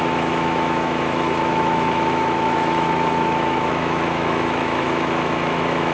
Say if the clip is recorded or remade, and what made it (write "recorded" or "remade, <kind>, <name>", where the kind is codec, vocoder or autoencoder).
remade, autoencoder, DAC-VAE